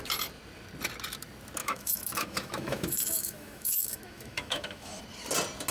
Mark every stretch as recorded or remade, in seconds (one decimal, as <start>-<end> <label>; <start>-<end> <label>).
0.0-1.6 recorded; 1.6-5.0 remade; 5.0-5.7 recorded